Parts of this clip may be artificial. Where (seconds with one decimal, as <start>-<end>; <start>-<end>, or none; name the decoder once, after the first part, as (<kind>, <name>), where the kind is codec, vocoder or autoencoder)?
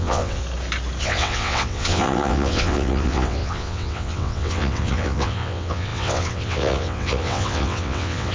0.0-0.4 (vocoder, WaveNeXt); 1.0-8.3